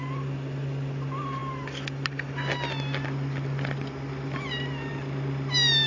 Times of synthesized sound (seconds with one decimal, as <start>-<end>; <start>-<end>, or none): none